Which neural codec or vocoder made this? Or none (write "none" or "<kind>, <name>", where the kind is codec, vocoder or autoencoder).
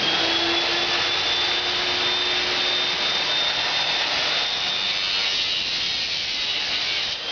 none